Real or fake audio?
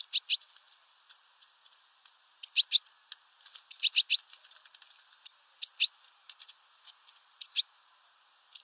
real